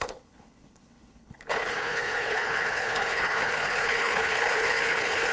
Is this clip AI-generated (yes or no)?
yes